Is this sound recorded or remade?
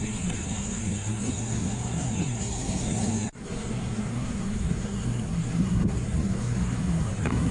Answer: remade